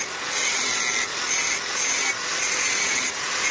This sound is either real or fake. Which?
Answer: real